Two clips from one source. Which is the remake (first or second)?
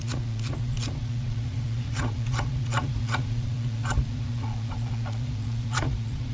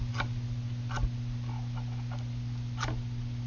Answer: first